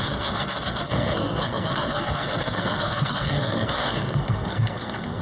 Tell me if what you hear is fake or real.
fake